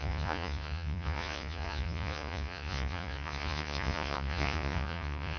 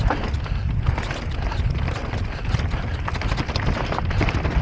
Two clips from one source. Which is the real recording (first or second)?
second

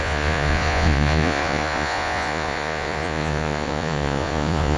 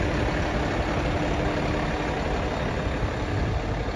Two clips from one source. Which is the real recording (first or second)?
second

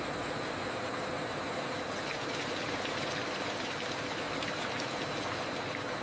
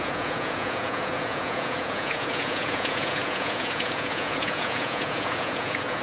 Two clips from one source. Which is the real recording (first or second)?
first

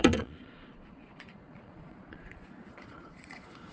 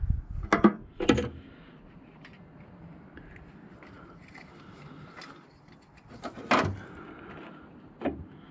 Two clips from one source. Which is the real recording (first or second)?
second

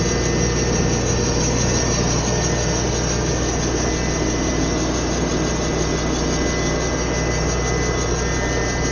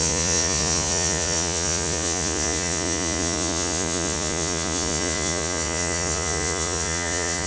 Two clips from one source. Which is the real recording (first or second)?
first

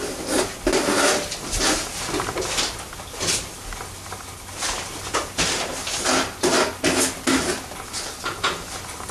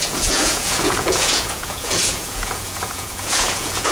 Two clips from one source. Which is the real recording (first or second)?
first